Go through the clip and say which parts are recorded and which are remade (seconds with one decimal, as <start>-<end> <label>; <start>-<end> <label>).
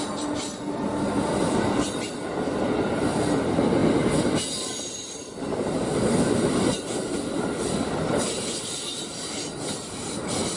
0.0-10.6 recorded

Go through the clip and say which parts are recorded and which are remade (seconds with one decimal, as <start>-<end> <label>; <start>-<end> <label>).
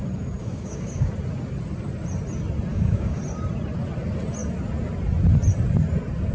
0.0-0.4 recorded; 0.4-1.1 remade; 1.1-2.7 recorded; 2.7-3.2 remade; 3.2-6.3 recorded